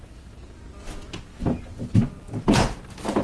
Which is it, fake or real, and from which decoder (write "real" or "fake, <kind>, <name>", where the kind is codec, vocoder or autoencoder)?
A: real